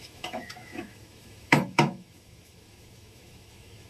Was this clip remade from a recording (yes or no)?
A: yes